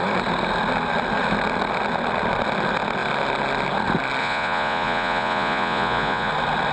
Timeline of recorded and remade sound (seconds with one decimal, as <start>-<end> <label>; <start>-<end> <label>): 0.0-4.2 recorded; 4.2-6.3 remade; 6.3-6.7 recorded